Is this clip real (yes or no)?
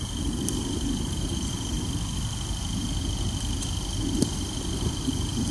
yes